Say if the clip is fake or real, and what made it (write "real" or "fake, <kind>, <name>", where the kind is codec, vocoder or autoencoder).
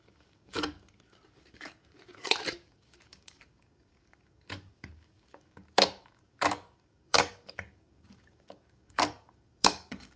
fake, codec, DAC